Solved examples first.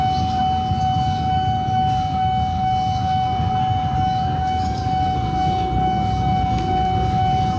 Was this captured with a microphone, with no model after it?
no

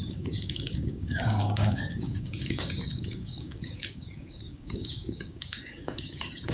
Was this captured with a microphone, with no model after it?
no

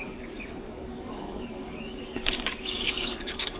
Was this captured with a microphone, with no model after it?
no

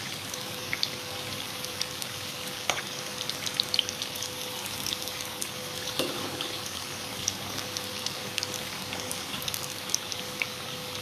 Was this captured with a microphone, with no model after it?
no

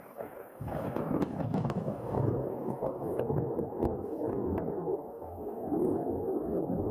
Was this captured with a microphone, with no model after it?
no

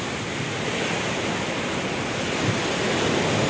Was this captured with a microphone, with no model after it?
yes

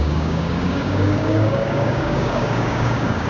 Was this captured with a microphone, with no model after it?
no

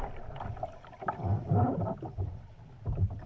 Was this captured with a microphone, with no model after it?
yes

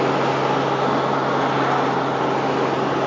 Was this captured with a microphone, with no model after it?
yes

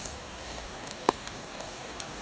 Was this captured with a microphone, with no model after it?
no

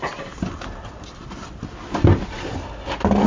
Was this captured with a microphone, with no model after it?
yes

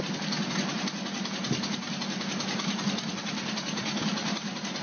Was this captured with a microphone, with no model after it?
yes